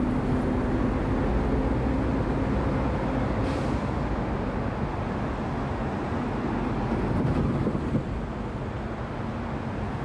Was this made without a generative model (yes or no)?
yes